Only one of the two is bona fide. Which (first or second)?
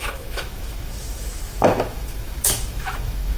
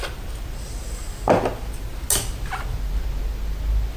second